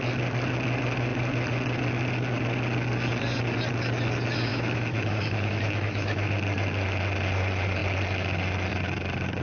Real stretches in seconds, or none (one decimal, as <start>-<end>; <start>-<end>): 0.0-4.5; 6.3-9.4